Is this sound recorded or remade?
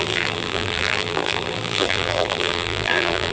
remade